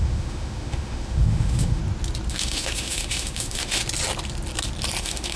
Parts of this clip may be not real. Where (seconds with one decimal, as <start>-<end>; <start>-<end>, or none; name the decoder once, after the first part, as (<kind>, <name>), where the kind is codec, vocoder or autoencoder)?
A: 0.0-1.8 (autoencoder, DAC-VAE); 2.3-3.8; 5.0-5.4